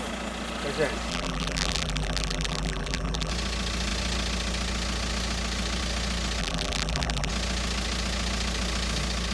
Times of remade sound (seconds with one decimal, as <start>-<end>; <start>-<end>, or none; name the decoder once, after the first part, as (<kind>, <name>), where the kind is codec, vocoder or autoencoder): 1.1-3.3 (vocoder, BigVGAN v2); 6.4-7.3